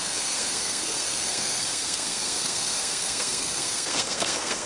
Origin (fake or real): fake